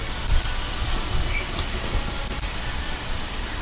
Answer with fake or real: fake